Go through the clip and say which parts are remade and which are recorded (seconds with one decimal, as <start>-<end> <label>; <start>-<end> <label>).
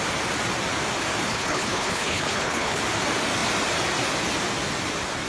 0.0-1.3 recorded; 1.3-2.8 remade; 2.8-5.3 recorded